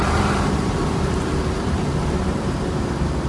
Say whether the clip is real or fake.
fake